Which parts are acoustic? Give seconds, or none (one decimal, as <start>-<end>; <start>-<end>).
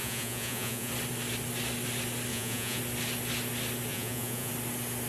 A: 0.9-2.3; 2.8-3.9; 4.5-5.1